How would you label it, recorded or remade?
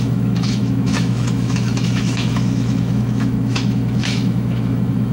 remade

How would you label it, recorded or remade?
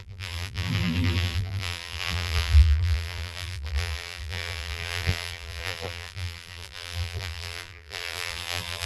remade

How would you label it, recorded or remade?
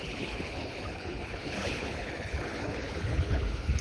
remade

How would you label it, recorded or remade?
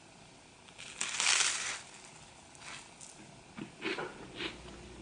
recorded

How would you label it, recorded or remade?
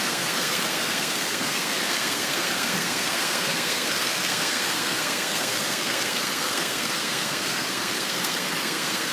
remade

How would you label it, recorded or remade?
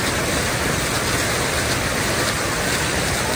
recorded